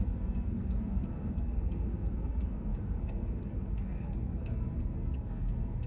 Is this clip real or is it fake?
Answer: fake